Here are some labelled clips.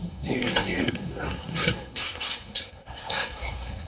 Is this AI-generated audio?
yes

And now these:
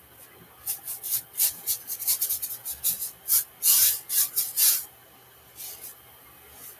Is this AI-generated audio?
no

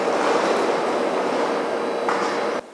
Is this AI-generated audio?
no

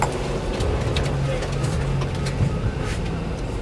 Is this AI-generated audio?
no